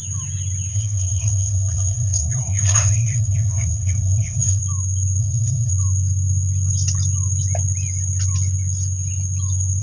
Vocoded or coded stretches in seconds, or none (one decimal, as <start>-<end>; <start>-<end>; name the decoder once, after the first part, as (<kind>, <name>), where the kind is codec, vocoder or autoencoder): 0.7-4.6 (codec, SNAC); 5.2-5.7

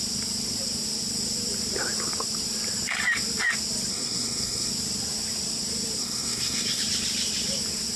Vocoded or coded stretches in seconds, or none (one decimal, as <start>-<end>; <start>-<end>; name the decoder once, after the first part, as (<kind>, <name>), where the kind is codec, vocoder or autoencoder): 3.9-4.7 (codec, SNAC); 6.0-6.8

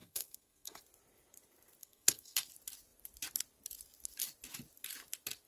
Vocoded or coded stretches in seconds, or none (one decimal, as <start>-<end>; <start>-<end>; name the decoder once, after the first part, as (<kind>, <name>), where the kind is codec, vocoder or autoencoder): 0.0-0.8 (codec, SNAC); 1.8-2.5

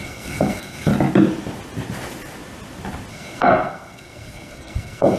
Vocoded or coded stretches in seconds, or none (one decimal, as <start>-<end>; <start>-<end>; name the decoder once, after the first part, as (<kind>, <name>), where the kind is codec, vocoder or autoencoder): 0.0-0.9 (codec, SNAC); 3.1-5.2

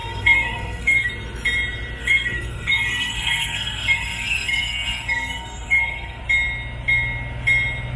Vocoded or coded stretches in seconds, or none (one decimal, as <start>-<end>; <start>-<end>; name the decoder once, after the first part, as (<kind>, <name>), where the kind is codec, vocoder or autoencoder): 0.0-1.1 (codec, SNAC); 2.0-6.2